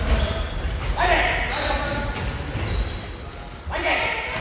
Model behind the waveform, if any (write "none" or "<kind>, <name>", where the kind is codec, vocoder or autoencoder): none